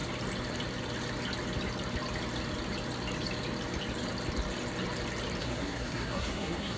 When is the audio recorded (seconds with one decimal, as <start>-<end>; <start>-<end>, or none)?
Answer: 0.0-5.4